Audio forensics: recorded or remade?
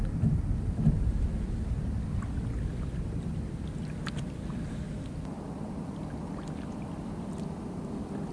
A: recorded